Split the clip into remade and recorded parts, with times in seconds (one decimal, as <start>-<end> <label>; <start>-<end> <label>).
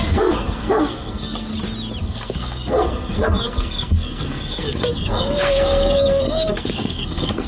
0.0-1.5 remade; 1.5-2.0 recorded; 2.0-7.5 remade